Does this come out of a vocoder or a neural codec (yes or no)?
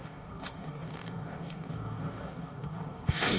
yes